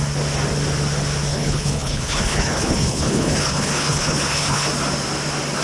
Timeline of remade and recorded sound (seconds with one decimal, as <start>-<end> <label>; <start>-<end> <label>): 0.0-1.3 recorded; 1.3-4.7 remade; 4.7-5.6 recorded